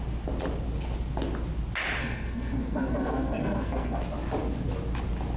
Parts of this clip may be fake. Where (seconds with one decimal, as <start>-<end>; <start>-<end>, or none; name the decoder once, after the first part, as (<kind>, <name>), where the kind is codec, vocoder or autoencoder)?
2.0-4.0 (codec, SNAC)

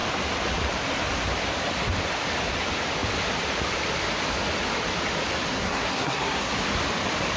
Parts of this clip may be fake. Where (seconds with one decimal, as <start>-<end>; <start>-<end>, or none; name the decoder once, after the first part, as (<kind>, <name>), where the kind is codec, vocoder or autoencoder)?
5.5-6.5 (codec, SNAC)

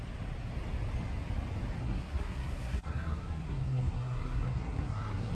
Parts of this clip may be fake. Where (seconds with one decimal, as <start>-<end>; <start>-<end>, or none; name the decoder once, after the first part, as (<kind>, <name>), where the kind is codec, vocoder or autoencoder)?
1.8-5.3 (codec, SNAC)

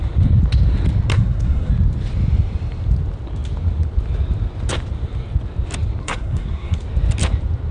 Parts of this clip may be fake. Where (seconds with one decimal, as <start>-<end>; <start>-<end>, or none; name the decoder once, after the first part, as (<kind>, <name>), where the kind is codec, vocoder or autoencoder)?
1.1-1.7 (codec, SNAC); 6.0-6.8

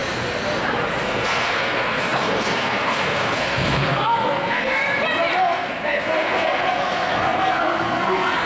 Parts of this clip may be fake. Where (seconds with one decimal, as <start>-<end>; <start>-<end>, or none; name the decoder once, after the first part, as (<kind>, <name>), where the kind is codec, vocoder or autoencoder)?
1.0-4.8 (codec, SNAC); 5.4-8.5

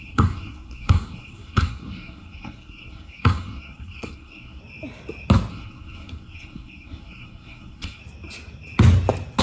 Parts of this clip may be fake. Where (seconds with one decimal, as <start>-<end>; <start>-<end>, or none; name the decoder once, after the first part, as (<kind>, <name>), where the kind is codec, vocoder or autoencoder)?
0.0-4.6 (codec, SNAC); 5.5-8.0